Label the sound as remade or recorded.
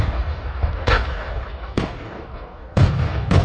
remade